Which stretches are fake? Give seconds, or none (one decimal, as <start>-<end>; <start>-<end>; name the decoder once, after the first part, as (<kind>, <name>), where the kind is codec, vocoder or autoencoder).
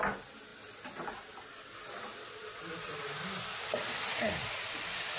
none